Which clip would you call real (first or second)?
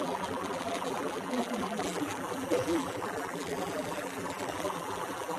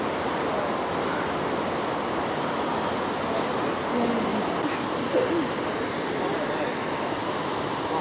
second